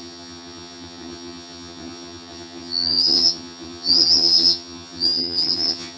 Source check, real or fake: fake